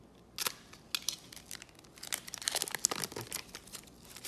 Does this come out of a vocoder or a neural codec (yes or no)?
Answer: no